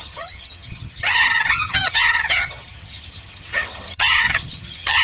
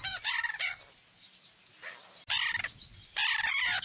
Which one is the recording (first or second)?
second